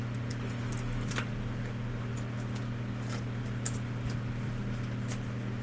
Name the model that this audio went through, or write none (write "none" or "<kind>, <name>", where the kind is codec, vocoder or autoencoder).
none